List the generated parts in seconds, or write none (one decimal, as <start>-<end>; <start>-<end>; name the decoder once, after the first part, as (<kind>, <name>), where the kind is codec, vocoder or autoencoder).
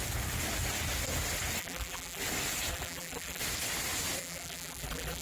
1.6-2.2 (vocoder, BigVGAN v2); 2.7-3.4; 4.2-5.2